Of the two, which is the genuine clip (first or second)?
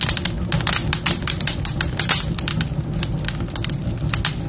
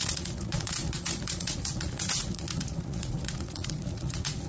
first